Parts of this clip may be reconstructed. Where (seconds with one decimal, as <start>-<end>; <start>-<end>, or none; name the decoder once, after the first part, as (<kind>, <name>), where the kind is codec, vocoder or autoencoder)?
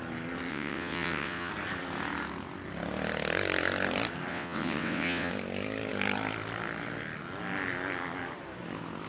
0.5-1.5 (vocoder, WaveNeXt); 4.3-5.3